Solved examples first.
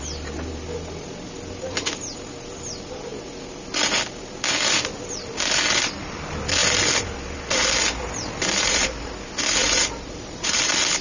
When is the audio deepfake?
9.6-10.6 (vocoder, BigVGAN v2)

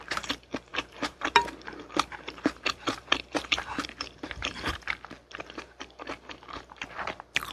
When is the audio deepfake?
0.0-7.5 (vocoder, BigVGAN v2)

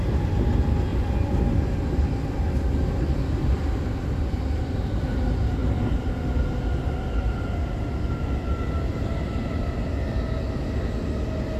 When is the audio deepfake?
none

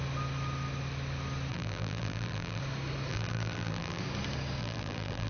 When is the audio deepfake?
1.5-2.6 (vocoder, BigVGAN v2); 3.1-4.0; 4.6-5.3